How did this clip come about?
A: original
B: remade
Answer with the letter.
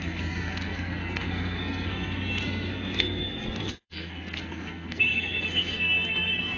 B